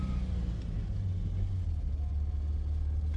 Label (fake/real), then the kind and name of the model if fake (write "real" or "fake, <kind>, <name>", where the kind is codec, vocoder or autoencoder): real